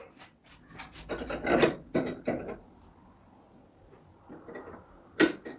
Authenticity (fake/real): real